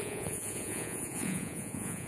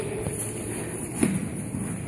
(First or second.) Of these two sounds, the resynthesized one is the first